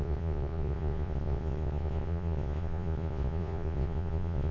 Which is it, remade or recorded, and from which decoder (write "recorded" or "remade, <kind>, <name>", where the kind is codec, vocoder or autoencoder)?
remade, vocoder, Vocos